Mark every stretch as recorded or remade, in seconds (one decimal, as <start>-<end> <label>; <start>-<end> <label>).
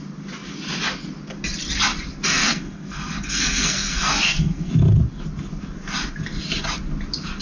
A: 0.0-2.3 recorded; 2.3-4.7 remade; 4.7-7.4 recorded